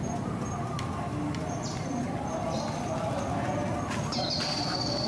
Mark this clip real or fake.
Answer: real